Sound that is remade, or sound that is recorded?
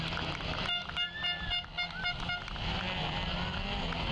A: recorded